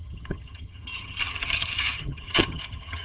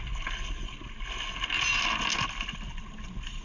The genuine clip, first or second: second